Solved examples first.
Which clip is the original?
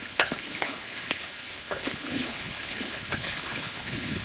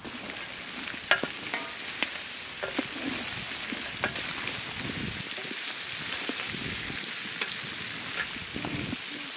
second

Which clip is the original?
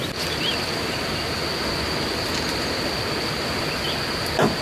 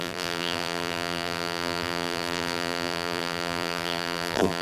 first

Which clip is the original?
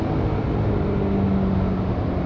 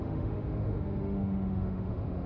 first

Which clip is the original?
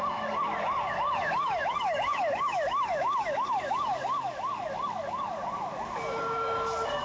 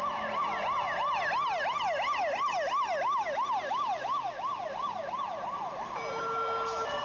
second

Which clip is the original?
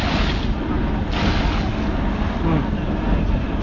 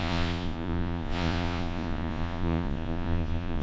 first